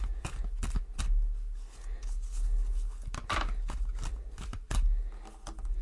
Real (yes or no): yes